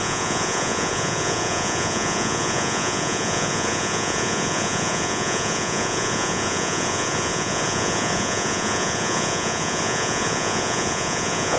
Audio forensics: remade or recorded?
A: remade